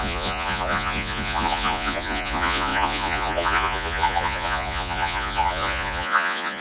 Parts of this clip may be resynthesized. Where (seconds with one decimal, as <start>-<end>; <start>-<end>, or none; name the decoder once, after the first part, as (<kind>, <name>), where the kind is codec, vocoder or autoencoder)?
0.0-6.6 (vocoder, Vocos)